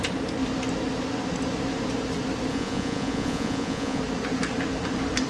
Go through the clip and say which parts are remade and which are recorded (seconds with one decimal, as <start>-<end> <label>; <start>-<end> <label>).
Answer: 0.0-2.5 recorded; 2.5-4.0 remade; 4.0-5.3 recorded